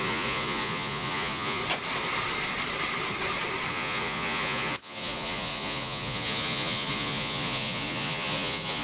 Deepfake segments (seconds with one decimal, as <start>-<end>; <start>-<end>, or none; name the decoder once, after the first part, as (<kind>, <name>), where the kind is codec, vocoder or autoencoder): 0.0-1.6 (vocoder, Vocos); 3.7-8.8